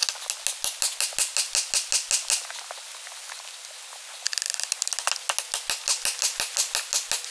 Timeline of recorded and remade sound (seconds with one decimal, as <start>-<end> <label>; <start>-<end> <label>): 0.0-4.3 recorded; 4.3-5.1 remade; 5.1-7.3 recorded